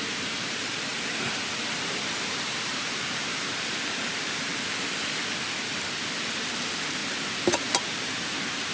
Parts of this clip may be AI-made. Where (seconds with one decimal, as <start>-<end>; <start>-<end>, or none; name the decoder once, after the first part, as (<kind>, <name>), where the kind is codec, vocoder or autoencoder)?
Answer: 0.0-0.9 (vocoder, BigVGAN v2); 1.7-4.5; 6.1-8.7

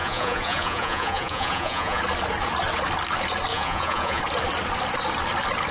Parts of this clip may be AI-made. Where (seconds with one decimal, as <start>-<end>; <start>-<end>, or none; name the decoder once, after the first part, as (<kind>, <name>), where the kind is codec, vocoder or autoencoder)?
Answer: 0.0-2.0 (vocoder, Vocos); 3.5-4.2